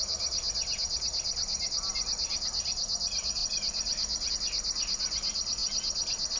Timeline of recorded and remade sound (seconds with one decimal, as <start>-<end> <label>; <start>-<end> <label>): 0.0-6.4 recorded